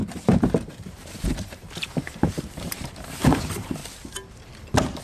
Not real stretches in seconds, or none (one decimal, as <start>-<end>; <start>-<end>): 0.6-3.8